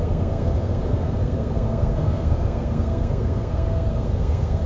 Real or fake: fake